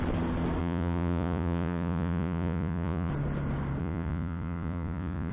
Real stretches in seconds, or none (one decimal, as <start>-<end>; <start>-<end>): 0.0-0.6; 3.1-3.8